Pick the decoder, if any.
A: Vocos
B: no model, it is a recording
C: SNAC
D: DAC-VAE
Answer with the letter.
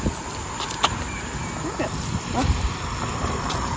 B